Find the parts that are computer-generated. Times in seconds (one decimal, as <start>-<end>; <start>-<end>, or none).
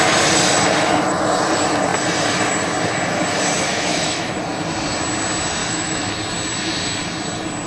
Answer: 3.7-4.3; 5.6-6.1